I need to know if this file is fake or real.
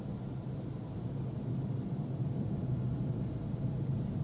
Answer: real